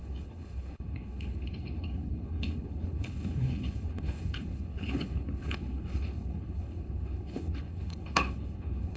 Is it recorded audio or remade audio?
remade